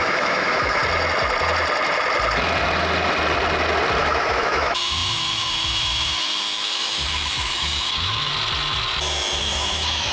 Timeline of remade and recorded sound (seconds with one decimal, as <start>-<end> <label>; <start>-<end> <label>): 0.0-0.8 remade; 0.8-4.0 recorded; 4.0-8.3 remade; 8.3-9.4 recorded; 9.4-10.1 remade